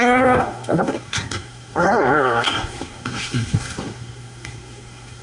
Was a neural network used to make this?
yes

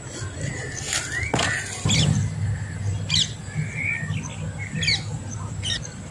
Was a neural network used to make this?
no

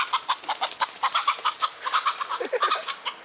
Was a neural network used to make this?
no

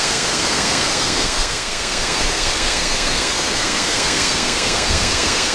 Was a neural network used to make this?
yes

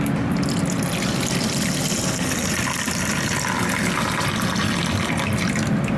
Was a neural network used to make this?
no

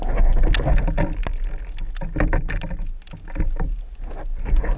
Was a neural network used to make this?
no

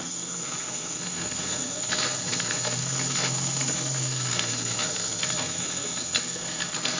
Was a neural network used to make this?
yes